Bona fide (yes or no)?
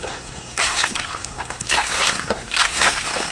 no